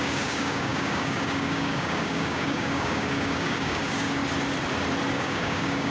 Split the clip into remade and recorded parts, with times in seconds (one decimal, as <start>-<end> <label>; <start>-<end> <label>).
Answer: 0.0-4.2 remade; 4.2-5.1 recorded; 5.1-5.9 remade